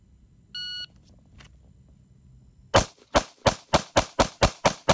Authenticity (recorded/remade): recorded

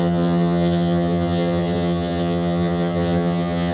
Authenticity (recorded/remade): remade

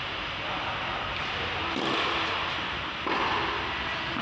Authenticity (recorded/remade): recorded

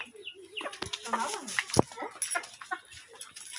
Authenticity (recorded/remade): recorded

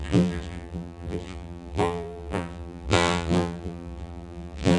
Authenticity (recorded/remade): remade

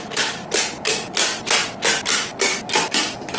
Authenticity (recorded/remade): recorded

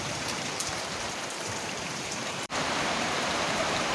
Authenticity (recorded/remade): remade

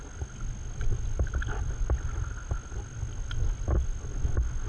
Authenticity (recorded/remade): recorded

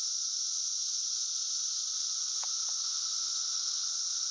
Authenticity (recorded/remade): recorded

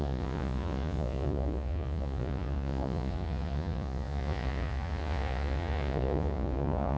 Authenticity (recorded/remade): remade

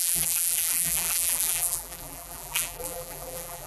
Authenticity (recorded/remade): remade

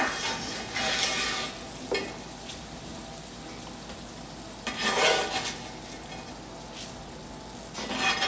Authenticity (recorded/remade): recorded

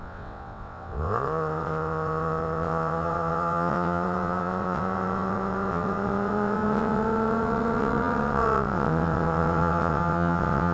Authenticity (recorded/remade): remade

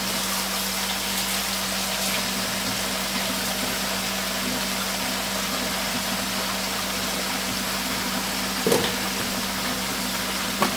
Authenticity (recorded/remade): recorded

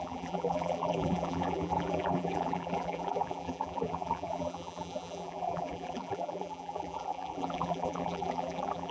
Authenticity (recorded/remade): remade